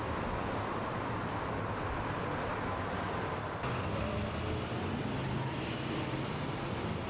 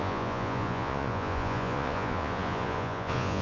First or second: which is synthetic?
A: second